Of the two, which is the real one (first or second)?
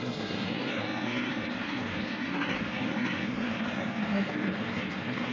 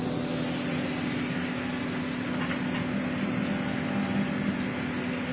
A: second